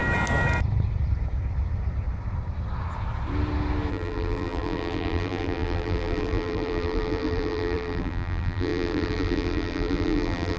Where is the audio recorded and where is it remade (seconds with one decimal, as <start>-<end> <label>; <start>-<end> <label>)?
0.0-3.9 recorded; 3.9-10.6 remade